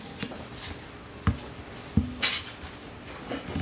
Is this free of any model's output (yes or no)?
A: yes